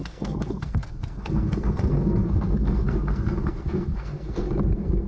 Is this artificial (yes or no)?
yes